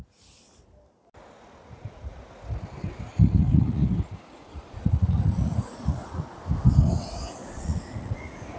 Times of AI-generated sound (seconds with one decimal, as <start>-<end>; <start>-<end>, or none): 1.6-2.3; 3.1-3.9; 4.4-6.4; 7.4-8.6